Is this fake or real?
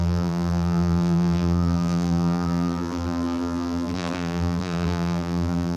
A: fake